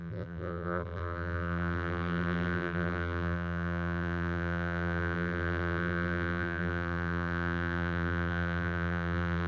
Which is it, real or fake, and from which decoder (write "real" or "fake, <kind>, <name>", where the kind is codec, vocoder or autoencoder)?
fake, vocoder, BigVGAN v2